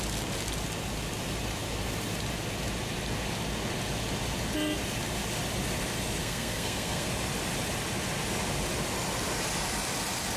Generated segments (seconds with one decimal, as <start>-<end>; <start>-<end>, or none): 6.2-7.1